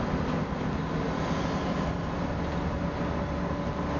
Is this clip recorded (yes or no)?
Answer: yes